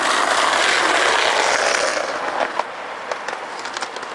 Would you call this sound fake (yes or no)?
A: no